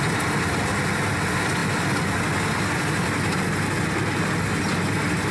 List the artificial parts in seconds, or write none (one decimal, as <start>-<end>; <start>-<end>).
none